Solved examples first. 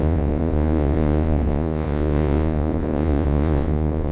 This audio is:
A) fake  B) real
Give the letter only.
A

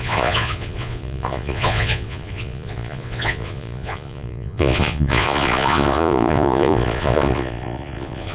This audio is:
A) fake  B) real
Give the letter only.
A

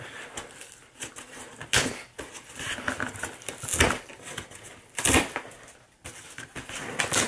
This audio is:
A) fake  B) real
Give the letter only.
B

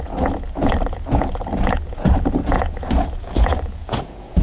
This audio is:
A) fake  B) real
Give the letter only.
A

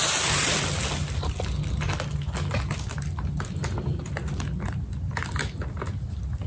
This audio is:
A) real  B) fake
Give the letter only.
A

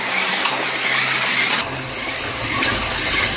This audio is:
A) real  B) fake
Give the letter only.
A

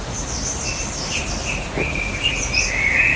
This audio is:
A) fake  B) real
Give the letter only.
B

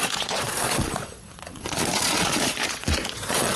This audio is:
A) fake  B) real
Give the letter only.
A